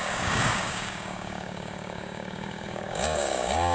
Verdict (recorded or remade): remade